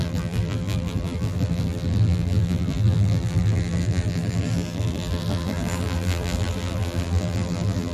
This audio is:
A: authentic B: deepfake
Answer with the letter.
B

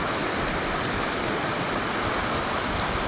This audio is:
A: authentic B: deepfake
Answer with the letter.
A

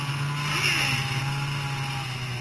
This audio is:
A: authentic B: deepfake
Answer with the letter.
A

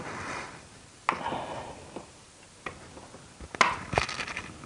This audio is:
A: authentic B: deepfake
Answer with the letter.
A